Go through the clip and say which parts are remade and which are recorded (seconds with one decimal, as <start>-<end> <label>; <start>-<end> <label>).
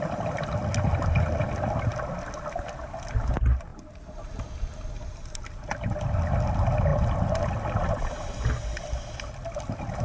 0.0-10.0 recorded